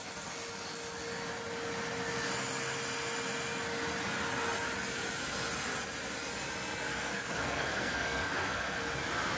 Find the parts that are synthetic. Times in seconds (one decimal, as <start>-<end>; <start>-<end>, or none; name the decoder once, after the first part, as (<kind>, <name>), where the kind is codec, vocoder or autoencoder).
6.9-8.8 (codec, SNAC)

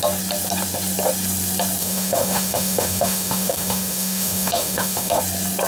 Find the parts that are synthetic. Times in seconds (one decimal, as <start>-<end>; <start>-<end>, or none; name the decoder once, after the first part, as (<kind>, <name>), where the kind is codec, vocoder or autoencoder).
1.8-5.2 (autoencoder, DAC-VAE)

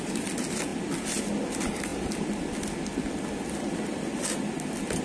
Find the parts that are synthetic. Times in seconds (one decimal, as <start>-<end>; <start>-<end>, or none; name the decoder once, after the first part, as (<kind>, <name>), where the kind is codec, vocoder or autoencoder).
none

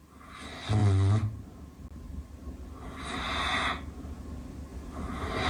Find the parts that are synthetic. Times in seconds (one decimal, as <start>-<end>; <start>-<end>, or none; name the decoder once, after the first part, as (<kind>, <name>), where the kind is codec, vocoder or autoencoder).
none

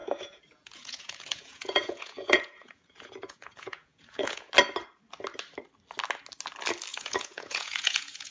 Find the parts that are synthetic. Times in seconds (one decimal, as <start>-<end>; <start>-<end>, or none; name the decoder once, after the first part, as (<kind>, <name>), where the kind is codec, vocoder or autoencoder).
0.0-4.5 (vocoder, Vocos); 6.9-8.3

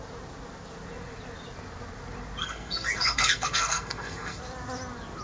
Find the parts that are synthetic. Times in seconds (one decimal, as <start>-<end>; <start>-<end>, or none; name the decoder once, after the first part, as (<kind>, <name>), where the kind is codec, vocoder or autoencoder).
2.4-4.4 (codec, SNAC)